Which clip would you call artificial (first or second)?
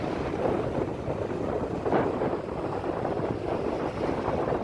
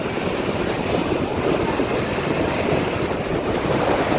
second